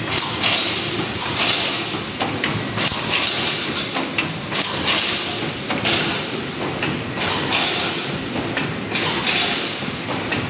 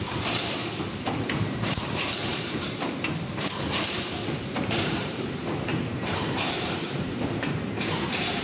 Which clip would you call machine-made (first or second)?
second